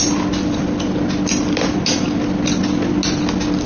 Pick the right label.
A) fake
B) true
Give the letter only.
B